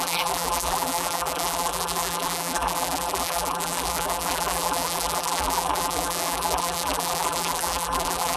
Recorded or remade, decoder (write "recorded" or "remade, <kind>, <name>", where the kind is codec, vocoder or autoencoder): remade, vocoder, BigVGAN v2